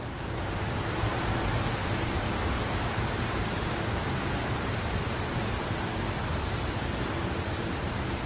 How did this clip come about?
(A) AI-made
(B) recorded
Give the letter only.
A